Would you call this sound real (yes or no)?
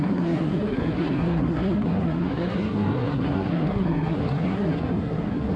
no